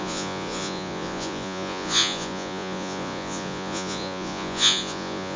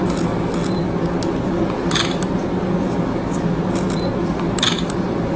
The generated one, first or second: first